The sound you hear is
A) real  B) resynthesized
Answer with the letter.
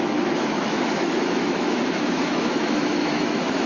B